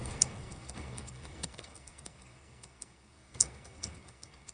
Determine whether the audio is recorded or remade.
remade